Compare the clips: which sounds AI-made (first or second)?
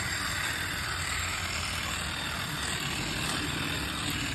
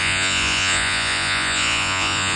second